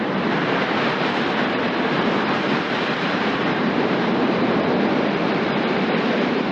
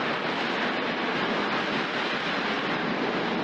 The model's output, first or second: first